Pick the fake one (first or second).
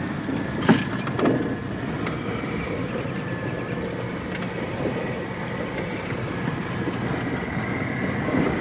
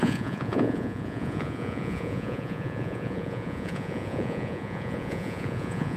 second